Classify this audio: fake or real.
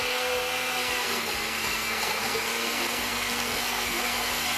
fake